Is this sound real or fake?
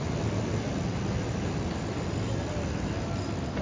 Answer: real